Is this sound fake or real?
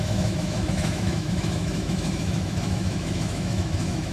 fake